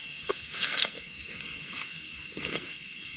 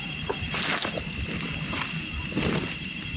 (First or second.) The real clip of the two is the second